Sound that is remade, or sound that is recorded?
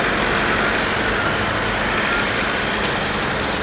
recorded